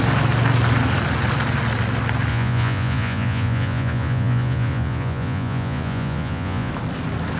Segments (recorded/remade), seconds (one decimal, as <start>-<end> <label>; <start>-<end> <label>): 0.0-2.3 recorded; 2.3-6.7 remade; 6.7-7.4 recorded